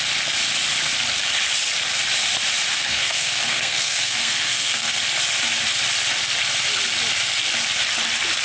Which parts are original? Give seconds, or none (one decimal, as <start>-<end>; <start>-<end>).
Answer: 0.0-2.7; 5.0-8.4